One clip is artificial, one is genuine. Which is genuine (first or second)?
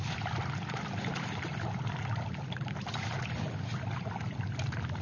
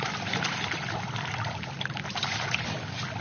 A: second